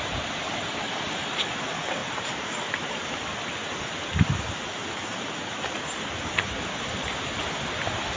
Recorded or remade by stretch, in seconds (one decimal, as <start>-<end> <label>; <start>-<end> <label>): 0.0-2.0 recorded; 2.0-3.1 remade; 3.1-8.2 recorded